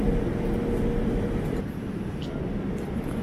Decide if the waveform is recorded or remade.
recorded